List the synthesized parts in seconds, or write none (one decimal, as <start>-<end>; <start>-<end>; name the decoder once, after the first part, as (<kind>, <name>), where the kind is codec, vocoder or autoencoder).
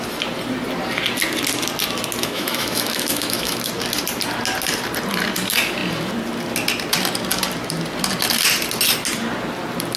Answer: 2.2-3.7 (autoencoder, DAC-VAE)